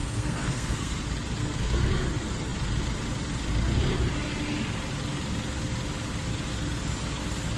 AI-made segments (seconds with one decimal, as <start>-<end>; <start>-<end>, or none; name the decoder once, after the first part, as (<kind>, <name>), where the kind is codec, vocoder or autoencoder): 0.0-1.0 (codec, SNAC); 1.4-1.9